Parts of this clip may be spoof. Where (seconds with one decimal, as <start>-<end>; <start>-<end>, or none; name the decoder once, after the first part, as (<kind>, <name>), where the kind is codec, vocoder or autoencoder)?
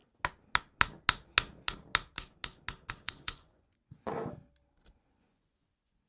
2.9-4.1 (vocoder, Vocos); 5.0-6.1